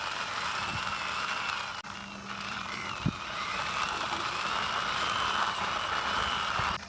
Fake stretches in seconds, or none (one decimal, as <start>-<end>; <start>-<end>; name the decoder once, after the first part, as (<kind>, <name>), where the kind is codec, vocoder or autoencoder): 0.0-0.7 (vocoder, BigVGAN v2); 2.5-6.9